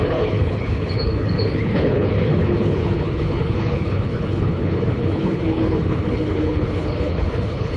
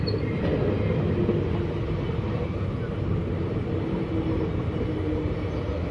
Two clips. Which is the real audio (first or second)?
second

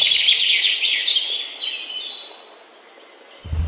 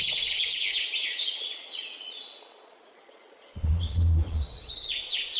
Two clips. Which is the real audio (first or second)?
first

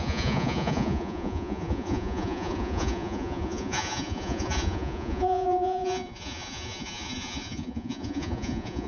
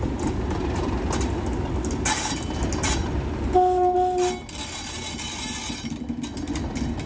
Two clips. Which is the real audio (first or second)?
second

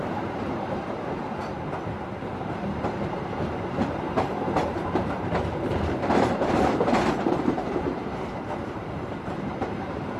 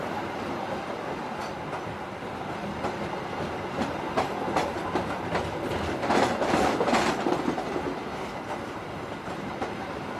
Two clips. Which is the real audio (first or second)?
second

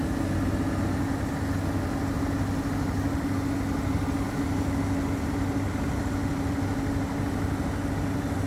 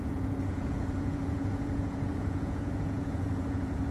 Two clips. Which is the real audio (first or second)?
first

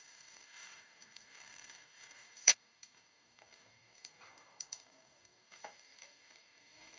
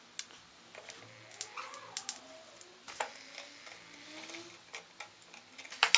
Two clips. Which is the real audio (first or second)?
second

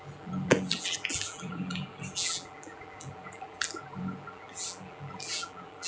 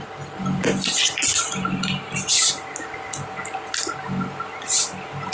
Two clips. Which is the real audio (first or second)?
second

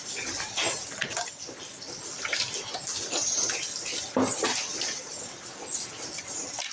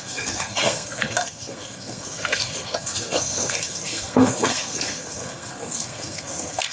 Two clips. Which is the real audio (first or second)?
first